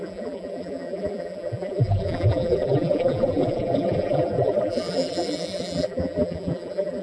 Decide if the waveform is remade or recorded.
remade